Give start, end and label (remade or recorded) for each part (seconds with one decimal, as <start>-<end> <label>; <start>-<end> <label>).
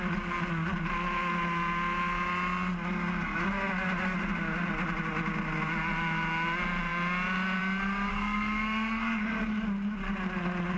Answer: 0.0-8.1 recorded; 8.1-9.2 remade; 9.2-10.8 recorded